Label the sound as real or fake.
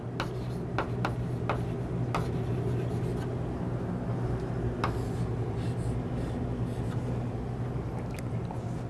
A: real